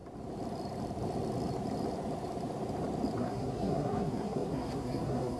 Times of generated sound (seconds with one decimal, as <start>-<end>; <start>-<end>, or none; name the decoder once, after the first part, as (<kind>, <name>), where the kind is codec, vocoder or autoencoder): 3.2-5.4 (codec, SNAC)